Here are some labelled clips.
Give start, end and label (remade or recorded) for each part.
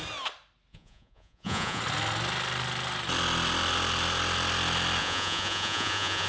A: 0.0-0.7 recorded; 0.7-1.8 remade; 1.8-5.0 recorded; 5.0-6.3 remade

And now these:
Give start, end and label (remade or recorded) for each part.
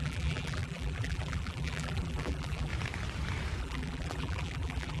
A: 0.0-2.7 remade; 2.7-3.6 recorded; 3.6-5.0 remade